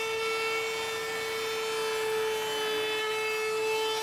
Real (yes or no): yes